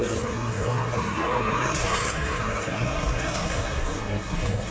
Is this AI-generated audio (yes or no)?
yes